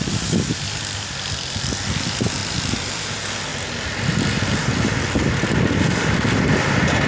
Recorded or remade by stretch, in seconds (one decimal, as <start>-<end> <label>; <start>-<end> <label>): 0.0-2.4 recorded; 2.4-3.1 remade; 3.1-7.1 recorded